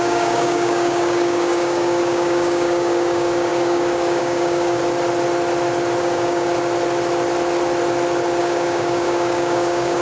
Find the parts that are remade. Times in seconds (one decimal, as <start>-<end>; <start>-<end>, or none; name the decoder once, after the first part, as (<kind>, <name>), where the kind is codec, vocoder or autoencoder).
0.0-4.8 (codec, DAC); 6.0-6.5; 8.4-10.0